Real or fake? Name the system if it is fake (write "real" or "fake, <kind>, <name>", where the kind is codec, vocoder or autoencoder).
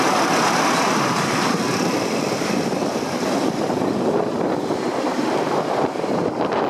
fake, vocoder, BigVGAN v2